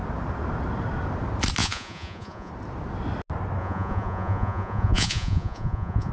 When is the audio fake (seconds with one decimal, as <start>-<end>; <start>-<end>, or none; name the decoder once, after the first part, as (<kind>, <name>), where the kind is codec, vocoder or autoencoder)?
1.6-2.5 (vocoder, Vocos); 3.6-6.1